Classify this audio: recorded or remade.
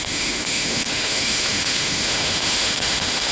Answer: remade